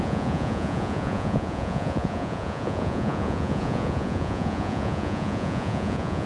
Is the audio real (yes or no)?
no